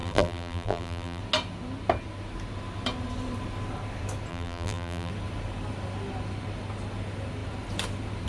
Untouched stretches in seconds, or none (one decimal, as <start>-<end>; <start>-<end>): 1.2-4.3; 5.1-8.3